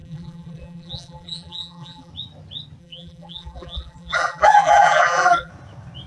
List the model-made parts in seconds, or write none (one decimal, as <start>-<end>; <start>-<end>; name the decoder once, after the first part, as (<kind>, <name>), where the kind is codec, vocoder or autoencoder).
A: 0.0-2.1 (vocoder, BigVGAN v2); 2.8-5.5